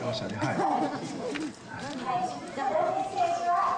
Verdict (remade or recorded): remade